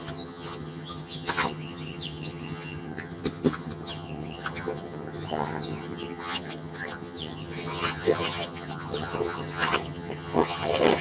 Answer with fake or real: fake